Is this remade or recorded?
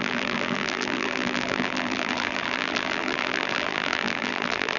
remade